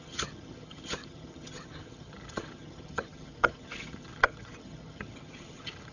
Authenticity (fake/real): fake